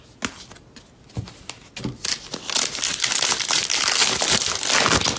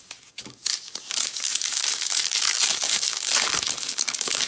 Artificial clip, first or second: second